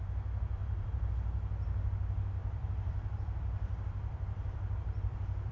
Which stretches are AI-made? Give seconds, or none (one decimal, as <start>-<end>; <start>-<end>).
0.6-1.1; 2.4-5.5